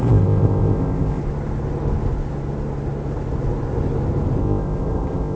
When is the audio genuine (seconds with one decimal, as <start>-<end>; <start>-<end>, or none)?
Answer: 1.2-4.4